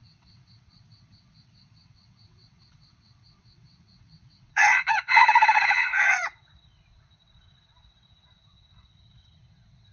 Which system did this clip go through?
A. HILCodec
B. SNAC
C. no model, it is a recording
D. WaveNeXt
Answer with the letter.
D